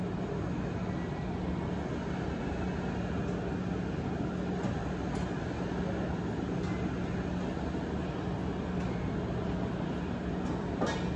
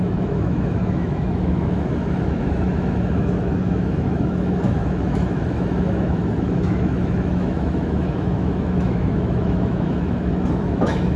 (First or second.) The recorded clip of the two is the first